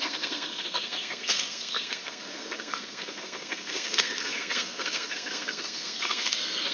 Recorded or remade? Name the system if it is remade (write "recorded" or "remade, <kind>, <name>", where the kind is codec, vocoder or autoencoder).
remade, codec, SNAC